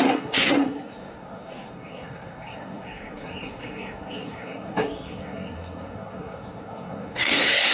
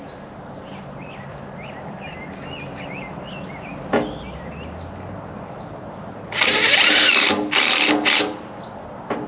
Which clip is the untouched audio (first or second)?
second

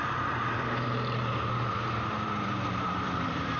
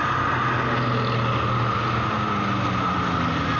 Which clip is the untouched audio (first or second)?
second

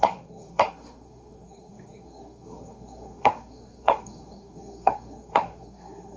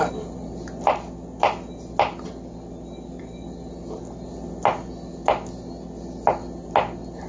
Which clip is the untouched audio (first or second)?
second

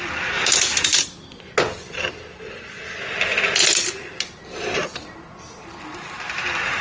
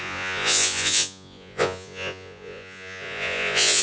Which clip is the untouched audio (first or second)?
first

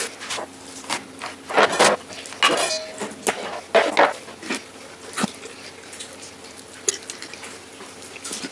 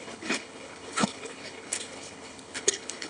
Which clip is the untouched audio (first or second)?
first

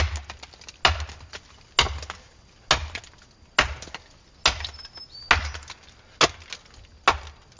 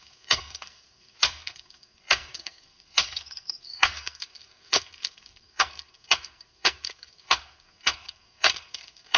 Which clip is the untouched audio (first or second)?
first